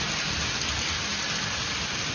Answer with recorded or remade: recorded